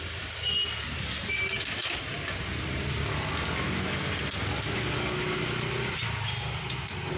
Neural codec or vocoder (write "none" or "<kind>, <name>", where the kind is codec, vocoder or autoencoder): none